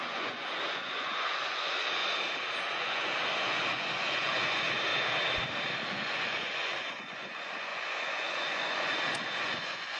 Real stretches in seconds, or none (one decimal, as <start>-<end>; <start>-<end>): 2.0-2.6; 4.9-5.9